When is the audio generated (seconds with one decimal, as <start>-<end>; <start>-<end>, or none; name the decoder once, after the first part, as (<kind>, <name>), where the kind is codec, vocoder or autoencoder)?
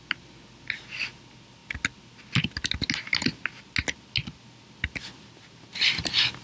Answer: none